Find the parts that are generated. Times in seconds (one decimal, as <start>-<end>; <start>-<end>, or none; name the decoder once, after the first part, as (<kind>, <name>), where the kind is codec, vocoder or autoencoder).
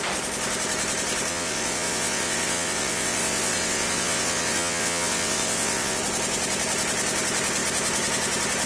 1.3-6.0 (vocoder, WaveNeXt)